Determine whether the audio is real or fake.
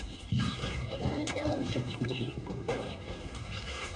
fake